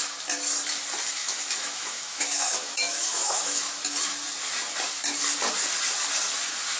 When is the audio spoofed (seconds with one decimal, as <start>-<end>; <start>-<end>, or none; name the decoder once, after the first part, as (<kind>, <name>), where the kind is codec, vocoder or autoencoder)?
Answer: 1.2-3.8 (autoencoder, DAC-VAE)